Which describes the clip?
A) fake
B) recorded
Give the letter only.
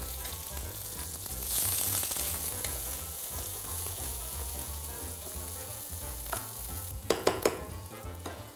A